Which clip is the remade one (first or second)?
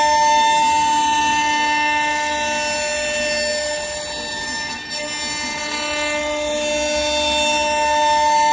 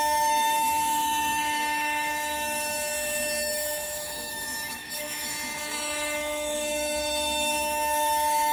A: second